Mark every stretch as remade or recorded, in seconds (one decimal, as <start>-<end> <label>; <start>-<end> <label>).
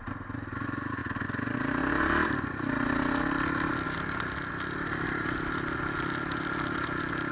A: 0.0-7.3 recorded